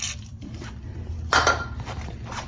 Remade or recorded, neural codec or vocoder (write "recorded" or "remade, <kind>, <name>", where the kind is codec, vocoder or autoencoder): remade, vocoder, BigVGAN v2